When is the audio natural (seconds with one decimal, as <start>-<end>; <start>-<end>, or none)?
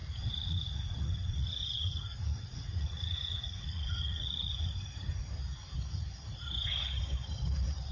4.7-7.9